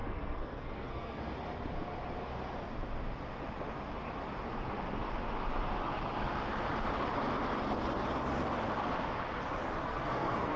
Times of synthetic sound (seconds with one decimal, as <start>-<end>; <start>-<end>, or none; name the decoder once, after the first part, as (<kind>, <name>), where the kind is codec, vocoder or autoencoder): 0.0-1.2 (codec, SNAC); 9.8-10.6